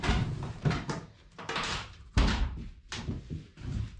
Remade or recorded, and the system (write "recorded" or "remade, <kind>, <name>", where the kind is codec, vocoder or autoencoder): remade, vocoder, BigVGAN v2